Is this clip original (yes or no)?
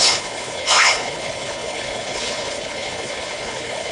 no